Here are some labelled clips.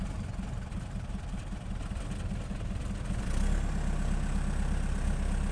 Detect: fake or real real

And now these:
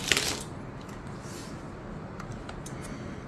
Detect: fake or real real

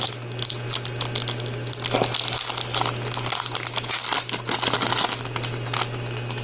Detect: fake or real real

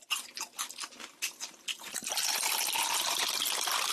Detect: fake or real real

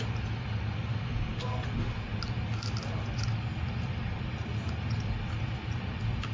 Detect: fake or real real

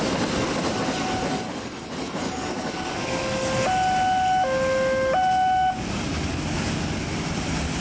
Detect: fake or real real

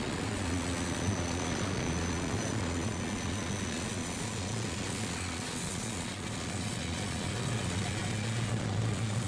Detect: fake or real fake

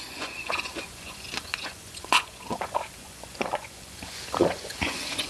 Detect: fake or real fake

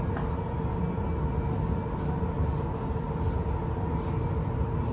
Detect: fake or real real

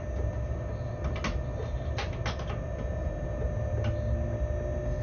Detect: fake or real real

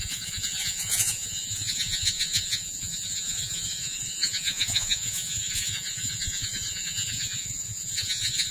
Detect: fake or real fake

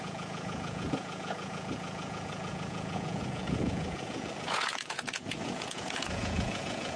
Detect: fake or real fake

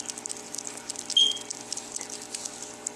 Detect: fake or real real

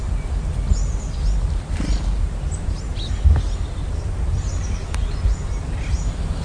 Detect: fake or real real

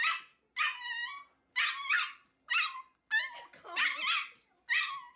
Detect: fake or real real